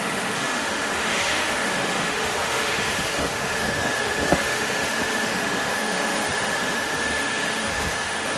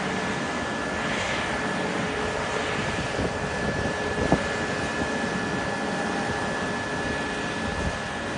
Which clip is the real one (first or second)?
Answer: second